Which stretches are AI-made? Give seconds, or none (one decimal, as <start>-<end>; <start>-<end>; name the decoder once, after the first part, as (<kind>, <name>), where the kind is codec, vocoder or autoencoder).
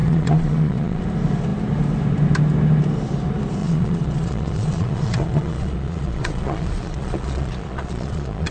0.0-1.0 (vocoder, Vocos); 3.6-8.5